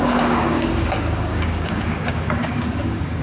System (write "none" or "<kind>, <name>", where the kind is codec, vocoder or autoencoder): codec, DAC